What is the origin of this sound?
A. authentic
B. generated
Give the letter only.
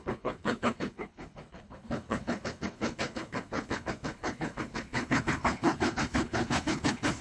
B